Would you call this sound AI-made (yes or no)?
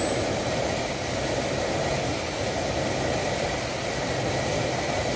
no